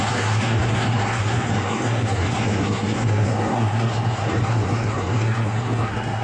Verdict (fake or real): fake